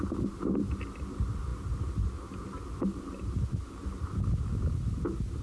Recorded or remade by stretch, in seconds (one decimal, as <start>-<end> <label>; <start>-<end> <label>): 0.0-5.4 recorded